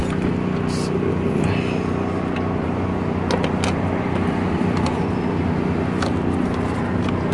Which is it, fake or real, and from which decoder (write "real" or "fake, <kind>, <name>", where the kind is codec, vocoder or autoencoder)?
real